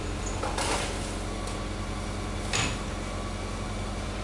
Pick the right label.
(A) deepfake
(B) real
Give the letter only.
B